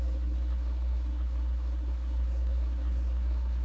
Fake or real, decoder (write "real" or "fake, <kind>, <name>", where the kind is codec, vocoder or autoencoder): fake, codec, SNAC